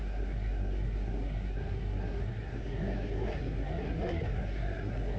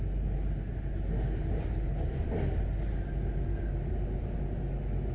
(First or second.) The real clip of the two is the second